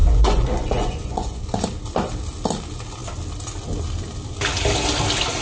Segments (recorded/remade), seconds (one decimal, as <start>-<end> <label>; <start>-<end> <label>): 0.0-1.4 remade; 1.4-5.4 recorded